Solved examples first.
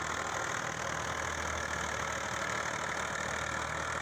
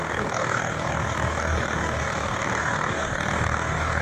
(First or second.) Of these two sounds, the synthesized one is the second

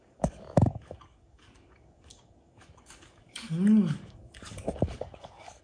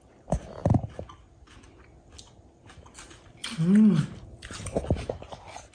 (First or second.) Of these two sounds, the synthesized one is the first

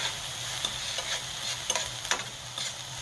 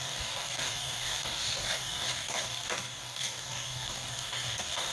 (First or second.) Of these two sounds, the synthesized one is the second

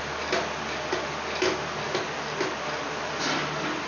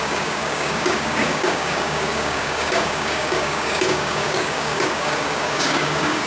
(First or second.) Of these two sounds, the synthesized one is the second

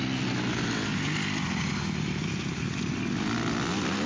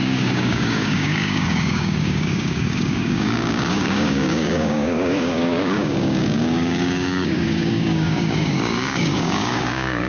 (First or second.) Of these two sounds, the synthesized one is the second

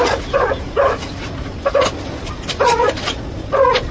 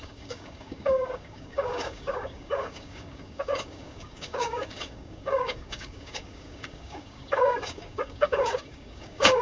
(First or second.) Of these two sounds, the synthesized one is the second